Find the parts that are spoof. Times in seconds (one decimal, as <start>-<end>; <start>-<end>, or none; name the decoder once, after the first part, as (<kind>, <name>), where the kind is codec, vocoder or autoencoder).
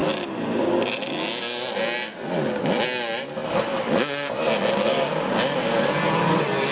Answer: none